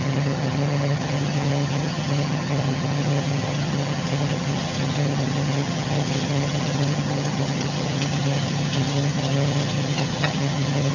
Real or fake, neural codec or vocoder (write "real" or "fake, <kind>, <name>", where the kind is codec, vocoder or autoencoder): fake, vocoder, HiFi-GAN